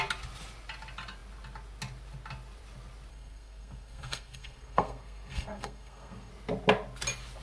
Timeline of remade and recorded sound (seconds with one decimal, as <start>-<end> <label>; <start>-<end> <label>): 0.0-3.1 recorded; 3.1-6.3 remade; 6.3-7.4 recorded